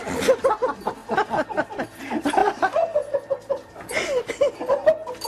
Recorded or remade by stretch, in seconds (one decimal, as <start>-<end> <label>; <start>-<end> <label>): 0.0-5.3 recorded